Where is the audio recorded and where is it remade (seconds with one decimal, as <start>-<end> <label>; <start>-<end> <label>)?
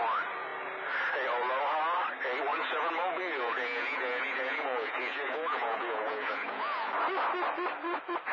0.0-2.5 recorded; 2.5-6.9 remade; 6.9-8.3 recorded